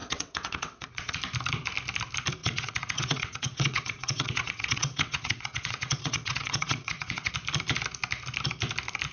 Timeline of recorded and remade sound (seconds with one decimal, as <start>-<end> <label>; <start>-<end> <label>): 0.0-1.2 remade; 1.2-2.4 recorded; 2.4-7.3 remade; 7.3-9.1 recorded